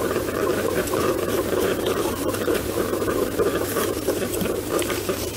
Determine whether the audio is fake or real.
fake